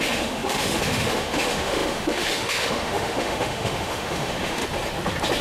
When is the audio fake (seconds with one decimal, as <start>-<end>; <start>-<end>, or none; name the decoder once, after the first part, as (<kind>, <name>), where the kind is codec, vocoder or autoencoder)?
0.0-4.6 (autoencoder, DAC-VAE)